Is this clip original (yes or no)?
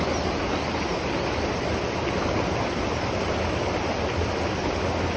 yes